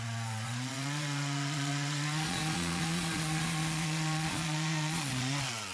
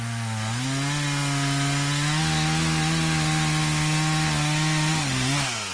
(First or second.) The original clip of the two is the second